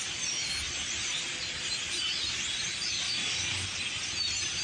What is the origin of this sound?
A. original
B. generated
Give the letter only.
A